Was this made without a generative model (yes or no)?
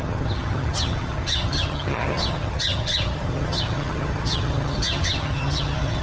no